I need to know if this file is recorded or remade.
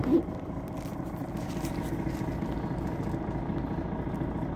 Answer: recorded